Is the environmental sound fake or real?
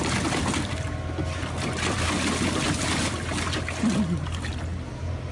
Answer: real